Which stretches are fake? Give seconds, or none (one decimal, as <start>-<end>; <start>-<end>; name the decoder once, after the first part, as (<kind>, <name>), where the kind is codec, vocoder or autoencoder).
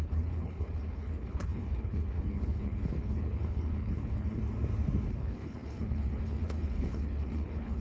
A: 0.0-4.4 (codec, HILCodec); 5.1-7.8